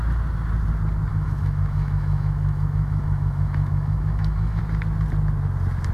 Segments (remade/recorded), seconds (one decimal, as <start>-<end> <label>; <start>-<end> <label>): 0.0-1.1 recorded; 1.1-4.6 remade; 4.6-5.9 recorded

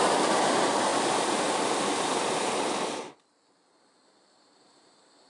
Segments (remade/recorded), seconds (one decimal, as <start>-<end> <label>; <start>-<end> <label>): 0.0-0.9 remade; 0.9-2.9 recorded; 2.9-5.3 remade